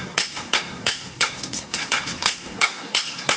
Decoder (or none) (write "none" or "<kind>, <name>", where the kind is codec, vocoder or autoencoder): codec, SNAC